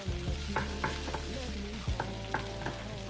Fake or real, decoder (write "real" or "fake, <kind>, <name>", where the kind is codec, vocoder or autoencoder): real